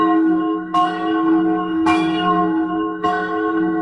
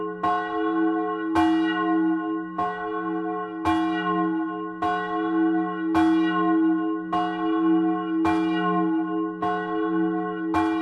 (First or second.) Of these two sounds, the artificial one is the first